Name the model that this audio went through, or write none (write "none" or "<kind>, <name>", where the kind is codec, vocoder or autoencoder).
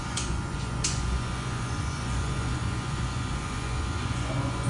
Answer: vocoder, Vocos